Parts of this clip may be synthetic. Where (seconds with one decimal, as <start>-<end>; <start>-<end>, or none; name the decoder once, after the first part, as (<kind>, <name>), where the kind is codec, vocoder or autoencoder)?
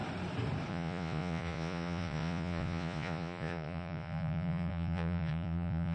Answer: 0.7-5.9 (vocoder, Vocos)